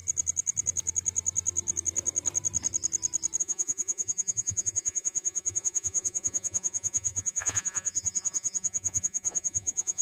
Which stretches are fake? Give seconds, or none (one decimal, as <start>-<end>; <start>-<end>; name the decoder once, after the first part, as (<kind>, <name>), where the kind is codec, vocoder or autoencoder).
3.4-10.0 (vocoder, Vocos)